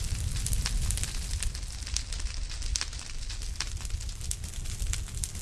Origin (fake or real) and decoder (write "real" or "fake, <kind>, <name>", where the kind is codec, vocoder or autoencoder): real